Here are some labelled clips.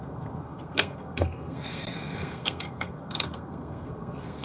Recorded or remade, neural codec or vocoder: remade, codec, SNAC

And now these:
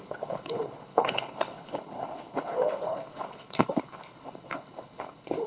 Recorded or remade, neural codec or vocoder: remade, codec, HILCodec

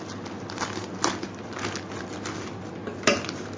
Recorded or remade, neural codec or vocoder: recorded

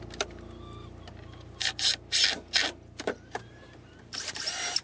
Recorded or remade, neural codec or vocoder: recorded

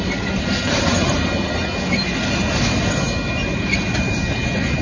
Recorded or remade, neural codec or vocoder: recorded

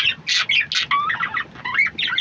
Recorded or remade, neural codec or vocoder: recorded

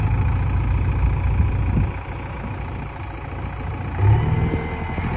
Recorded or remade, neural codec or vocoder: recorded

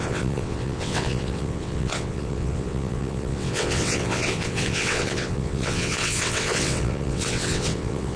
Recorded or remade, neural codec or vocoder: remade, vocoder, WaveNeXt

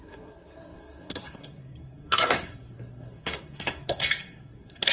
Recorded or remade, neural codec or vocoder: remade, codec, SNAC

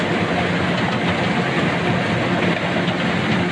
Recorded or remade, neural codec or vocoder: recorded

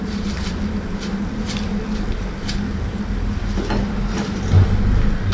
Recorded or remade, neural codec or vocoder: recorded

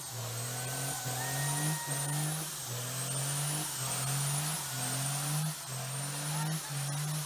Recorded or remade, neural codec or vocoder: recorded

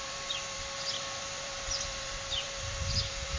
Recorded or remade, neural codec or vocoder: remade, vocoder, BigVGAN v2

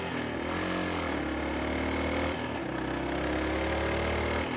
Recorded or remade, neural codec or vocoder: recorded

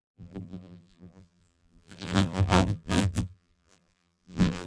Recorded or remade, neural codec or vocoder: remade, vocoder, BigVGAN v2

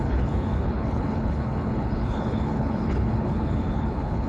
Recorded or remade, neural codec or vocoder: remade, codec, HILCodec